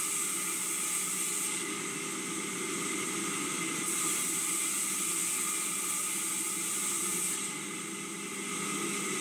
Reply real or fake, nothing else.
real